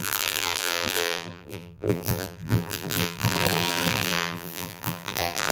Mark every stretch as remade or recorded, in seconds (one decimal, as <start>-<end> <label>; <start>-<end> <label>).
0.0-5.5 remade

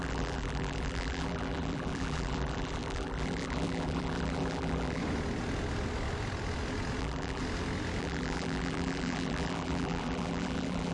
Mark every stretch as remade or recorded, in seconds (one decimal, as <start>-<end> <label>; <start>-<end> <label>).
0.0-5.0 remade; 5.0-7.0 recorded; 7.0-7.4 remade; 7.4-8.0 recorded; 8.0-10.9 remade

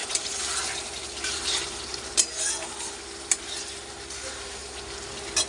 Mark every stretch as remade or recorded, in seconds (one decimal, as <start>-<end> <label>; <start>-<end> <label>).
0.0-2.3 remade; 2.3-5.5 recorded